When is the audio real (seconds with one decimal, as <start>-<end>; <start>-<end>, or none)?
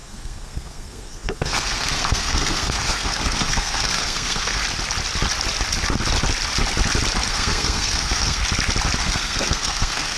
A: 4.6-7.3; 8.4-9.0